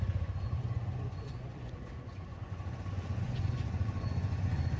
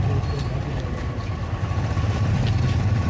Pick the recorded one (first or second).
second